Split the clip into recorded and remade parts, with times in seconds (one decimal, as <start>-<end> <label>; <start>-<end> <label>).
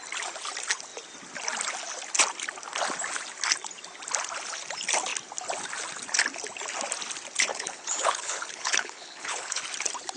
0.0-7.5 recorded; 7.5-9.6 remade; 9.6-10.2 recorded